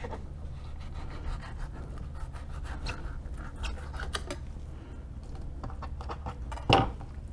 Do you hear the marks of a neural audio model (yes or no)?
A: no